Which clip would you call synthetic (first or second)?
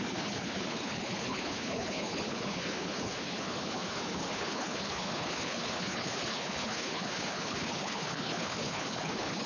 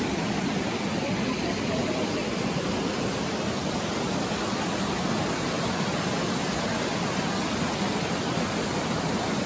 first